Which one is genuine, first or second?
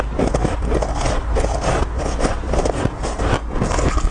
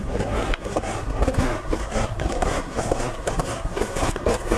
first